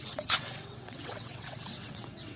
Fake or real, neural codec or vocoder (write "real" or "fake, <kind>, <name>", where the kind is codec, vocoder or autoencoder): fake, vocoder, WaveNeXt